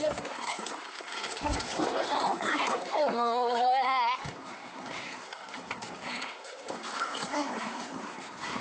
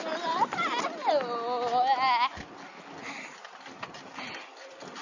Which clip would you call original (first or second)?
second